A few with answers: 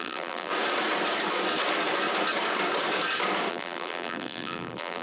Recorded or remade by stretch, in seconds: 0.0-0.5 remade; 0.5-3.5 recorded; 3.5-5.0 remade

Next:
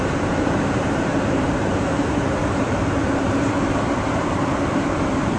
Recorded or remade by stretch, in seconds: 0.0-5.4 remade

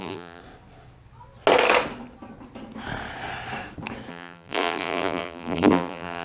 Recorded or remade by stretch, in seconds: 0.0-0.4 remade; 0.4-4.1 recorded; 4.1-6.2 remade

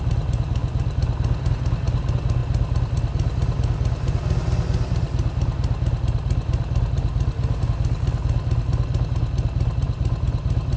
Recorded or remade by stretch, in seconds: 0.0-10.8 recorded

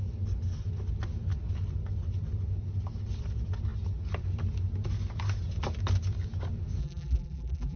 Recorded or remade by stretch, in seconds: 0.0-6.8 recorded; 6.8-7.8 remade

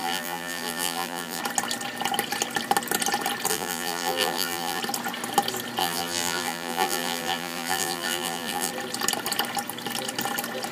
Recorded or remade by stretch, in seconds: 0.0-1.4 remade; 1.4-3.5 recorded; 3.5-4.8 remade; 4.8-5.8 recorded; 5.8-8.7 remade; 8.7-10.7 recorded

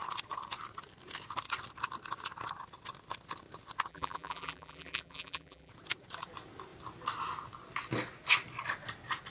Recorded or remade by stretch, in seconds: 0.0-3.9 recorded; 3.9-5.7 remade; 5.7-9.3 recorded